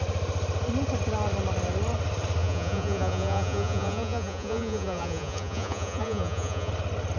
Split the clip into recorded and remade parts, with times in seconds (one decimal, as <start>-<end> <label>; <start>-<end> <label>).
0.0-2.4 recorded; 2.4-6.7 remade; 6.7-7.2 recorded